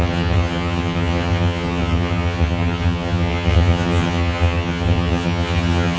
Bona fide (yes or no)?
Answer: no